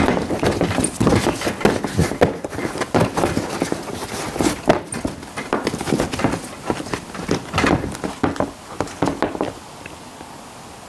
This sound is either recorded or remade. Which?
recorded